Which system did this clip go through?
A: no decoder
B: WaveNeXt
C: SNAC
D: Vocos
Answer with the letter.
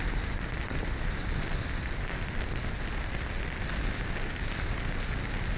A